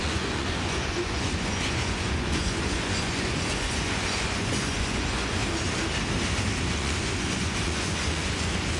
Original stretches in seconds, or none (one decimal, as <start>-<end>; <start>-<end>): 5.4-6.6

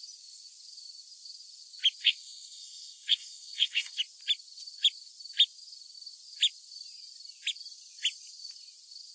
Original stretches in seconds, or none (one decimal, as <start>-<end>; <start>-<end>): 0.0-2.0; 4.0-9.1

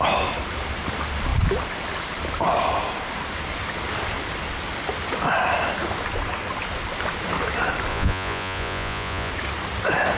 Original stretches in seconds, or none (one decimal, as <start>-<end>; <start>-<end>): 0.0-7.9; 9.3-10.2

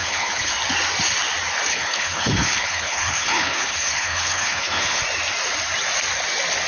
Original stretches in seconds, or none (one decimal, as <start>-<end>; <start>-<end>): 0.5-1.7; 5.0-6.7